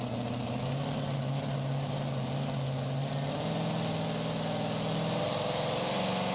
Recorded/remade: recorded